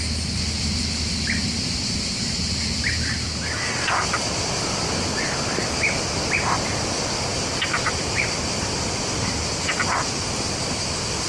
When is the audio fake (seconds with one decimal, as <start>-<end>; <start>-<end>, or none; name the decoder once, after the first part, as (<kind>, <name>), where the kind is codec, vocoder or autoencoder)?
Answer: 7.3-9.2 (vocoder, BigVGAN v2)